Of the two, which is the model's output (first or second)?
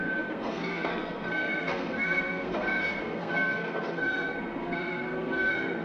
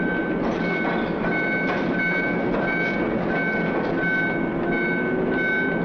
first